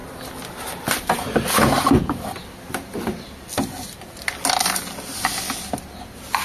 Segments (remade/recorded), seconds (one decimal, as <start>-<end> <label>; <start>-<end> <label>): 0.0-6.4 recorded